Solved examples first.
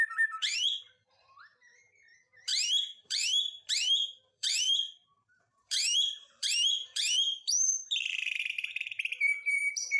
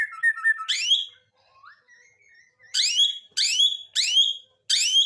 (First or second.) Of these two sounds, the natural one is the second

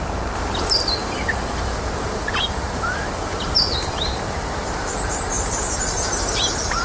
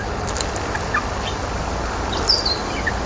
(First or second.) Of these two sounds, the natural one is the second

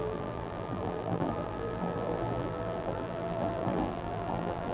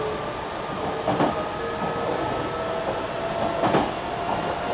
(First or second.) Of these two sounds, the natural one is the second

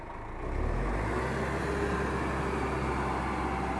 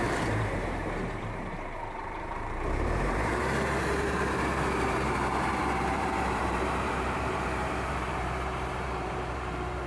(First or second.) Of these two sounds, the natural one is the first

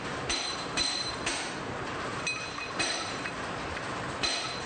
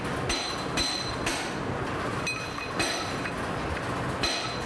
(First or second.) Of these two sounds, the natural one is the second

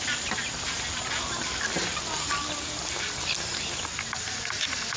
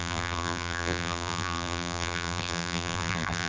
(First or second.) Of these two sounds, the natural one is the first